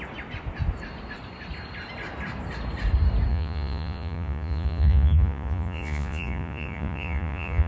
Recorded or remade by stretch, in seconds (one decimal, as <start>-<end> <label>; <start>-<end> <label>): 0.0-3.3 recorded; 3.3-7.7 remade